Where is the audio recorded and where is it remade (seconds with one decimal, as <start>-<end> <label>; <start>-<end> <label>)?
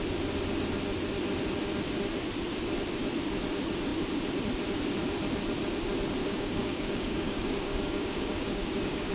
0.0-6.2 recorded; 6.2-9.1 remade